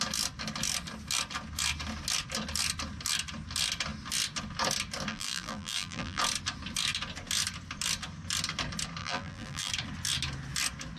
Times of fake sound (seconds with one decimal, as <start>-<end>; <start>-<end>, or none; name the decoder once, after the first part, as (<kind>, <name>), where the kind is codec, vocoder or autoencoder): 5.1-6.2 (vocoder, BigVGAN v2); 9.0-9.7